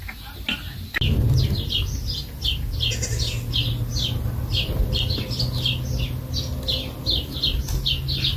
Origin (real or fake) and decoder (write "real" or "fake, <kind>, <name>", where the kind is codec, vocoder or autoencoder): real